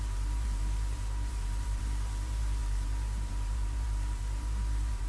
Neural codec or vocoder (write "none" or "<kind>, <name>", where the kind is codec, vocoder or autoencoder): vocoder, BigVGAN v2